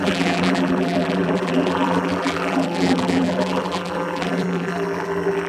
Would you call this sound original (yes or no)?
no